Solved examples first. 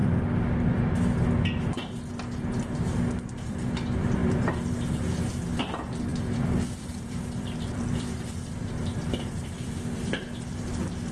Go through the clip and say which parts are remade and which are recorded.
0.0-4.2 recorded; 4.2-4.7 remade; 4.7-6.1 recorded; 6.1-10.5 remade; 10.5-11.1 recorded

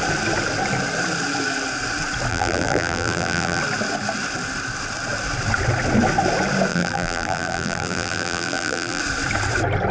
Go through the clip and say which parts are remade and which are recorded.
0.0-2.3 recorded; 2.3-3.6 remade; 3.6-6.7 recorded; 6.7-9.0 remade; 9.0-9.9 recorded

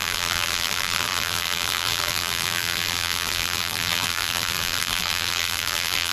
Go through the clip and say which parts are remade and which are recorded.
0.0-6.1 remade

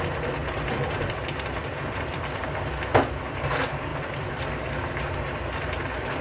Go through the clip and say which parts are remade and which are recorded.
0.0-0.4 recorded; 0.4-2.4 remade; 2.4-3.9 recorded; 3.9-4.5 remade; 4.5-6.2 recorded

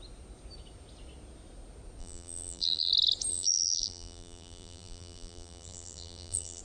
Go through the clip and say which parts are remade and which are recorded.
0.0-2.0 recorded; 2.0-2.9 remade; 2.9-3.3 recorded; 3.3-6.6 remade

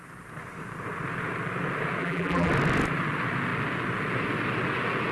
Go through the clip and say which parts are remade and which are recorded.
0.0-2.0 recorded; 2.0-2.5 remade; 2.5-5.1 recorded

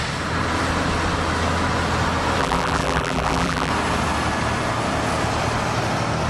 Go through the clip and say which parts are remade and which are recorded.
0.0-2.4 recorded; 2.4-3.7 remade; 3.7-6.3 recorded